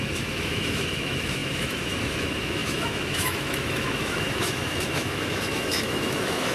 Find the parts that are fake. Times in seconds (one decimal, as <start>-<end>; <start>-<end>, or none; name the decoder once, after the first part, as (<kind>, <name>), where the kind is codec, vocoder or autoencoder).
0.0-6.5 (autoencoder, DAC-VAE)